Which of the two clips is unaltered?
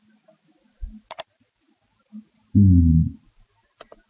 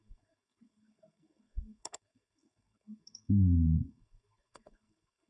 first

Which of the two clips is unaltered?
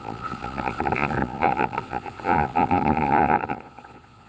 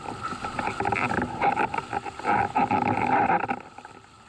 second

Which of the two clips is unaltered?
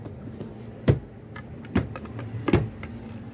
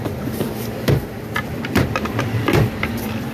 first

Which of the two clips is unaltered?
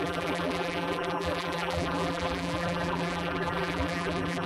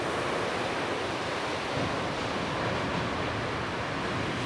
second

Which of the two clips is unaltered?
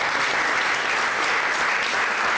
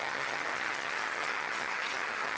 first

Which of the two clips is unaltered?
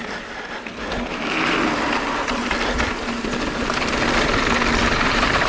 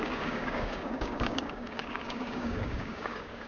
first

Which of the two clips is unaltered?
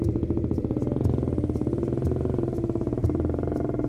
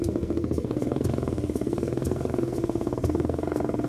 first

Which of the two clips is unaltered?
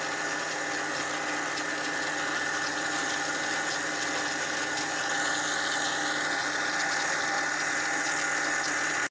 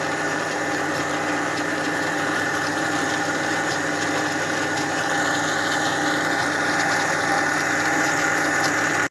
first